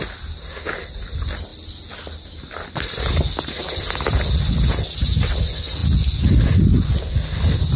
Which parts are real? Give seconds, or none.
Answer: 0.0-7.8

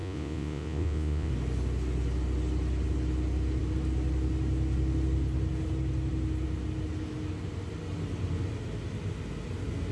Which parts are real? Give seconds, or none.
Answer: 1.3-9.9

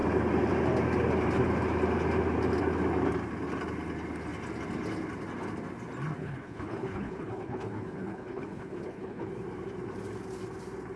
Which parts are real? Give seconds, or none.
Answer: 0.0-6.2; 9.3-11.0

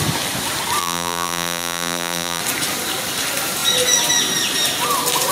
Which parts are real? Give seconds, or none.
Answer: 0.0-0.8; 2.4-5.3

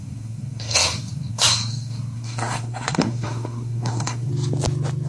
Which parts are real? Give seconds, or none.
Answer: 4.3-5.1

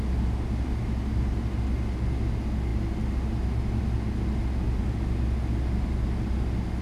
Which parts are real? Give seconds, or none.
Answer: 0.0-6.8

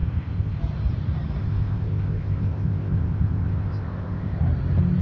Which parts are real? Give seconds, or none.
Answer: 0.6-1.4; 4.4-5.0